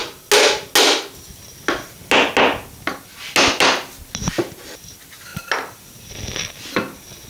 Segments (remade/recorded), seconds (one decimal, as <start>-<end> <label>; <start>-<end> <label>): 0.0-7.3 recorded